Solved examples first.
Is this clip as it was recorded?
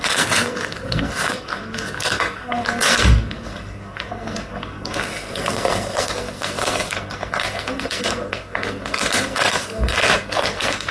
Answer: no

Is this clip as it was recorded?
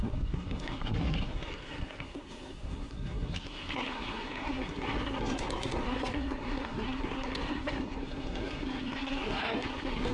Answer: no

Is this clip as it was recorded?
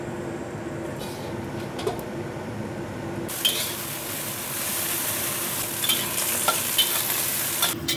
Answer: yes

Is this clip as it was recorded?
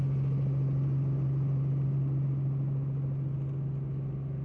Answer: yes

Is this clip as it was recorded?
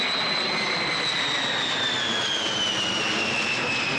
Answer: yes